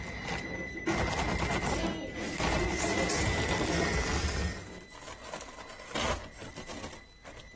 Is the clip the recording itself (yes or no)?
yes